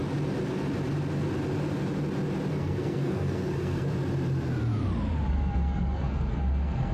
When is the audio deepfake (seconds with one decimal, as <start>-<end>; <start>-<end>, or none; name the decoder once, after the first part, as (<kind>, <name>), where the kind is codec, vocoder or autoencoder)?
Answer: 2.5-3.9 (codec, SNAC); 5.3-6.9